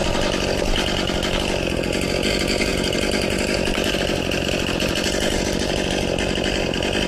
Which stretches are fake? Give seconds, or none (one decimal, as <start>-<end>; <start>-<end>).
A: 0.0-1.1; 2.7-7.1